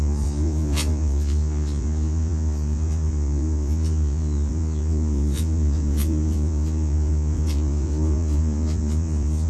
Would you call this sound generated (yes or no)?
yes